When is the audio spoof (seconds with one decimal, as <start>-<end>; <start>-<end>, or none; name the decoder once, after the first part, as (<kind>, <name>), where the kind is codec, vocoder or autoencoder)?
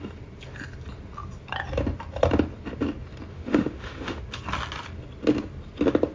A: 3.3-4.2 (autoencoder, DAC-VAE)